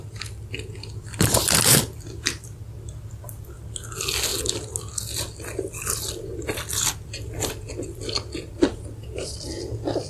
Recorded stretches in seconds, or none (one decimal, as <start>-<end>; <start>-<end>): 0.0-10.1